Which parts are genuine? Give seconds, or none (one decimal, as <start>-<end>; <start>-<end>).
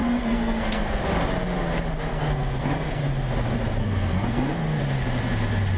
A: 1.0-2.1; 3.0-3.8; 4.8-5.8